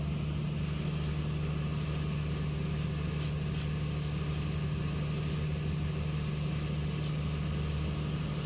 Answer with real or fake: real